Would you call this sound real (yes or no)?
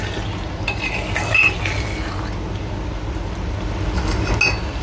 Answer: yes